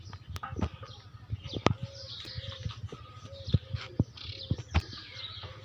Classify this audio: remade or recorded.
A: recorded